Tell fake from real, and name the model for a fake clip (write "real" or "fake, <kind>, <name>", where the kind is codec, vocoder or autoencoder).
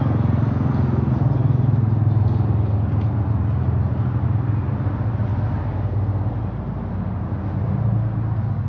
real